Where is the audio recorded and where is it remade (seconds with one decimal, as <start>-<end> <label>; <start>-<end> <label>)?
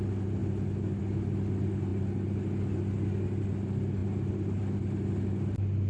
0.0-5.9 recorded